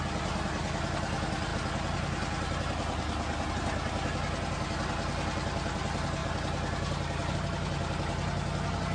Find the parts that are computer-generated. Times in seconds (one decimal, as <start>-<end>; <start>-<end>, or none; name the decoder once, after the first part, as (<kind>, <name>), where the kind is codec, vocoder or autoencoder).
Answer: none